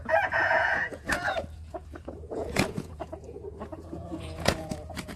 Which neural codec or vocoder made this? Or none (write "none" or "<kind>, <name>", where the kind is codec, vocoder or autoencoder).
vocoder, Vocos